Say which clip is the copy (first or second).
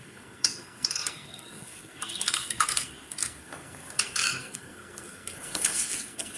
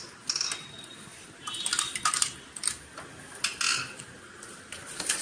first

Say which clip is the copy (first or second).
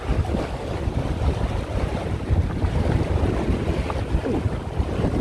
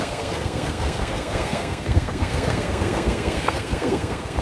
second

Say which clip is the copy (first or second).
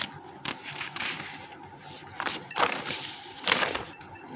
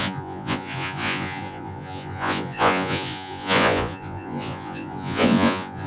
second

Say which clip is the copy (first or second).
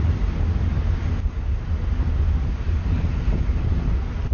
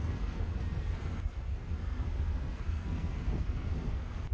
second